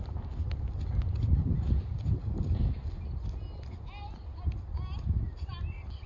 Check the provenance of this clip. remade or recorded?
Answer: recorded